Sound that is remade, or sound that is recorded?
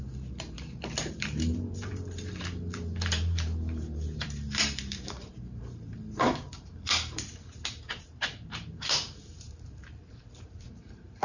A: remade